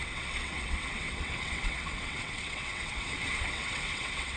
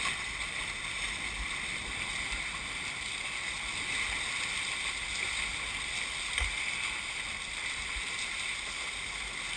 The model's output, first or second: first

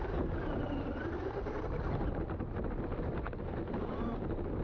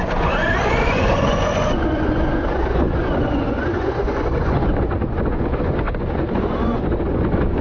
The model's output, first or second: second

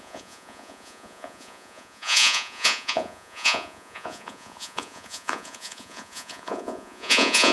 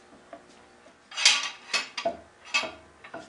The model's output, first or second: first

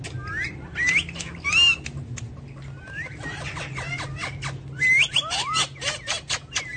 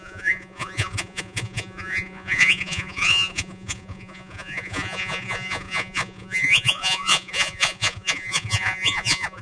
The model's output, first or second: second